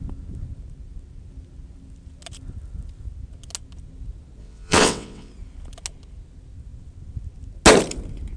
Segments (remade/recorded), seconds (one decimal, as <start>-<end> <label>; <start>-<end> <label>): 0.0-4.4 recorded; 4.4-5.3 remade; 5.3-8.4 recorded